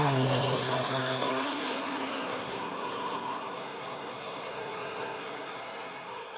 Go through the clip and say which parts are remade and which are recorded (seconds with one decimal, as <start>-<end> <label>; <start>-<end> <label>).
0.0-6.4 remade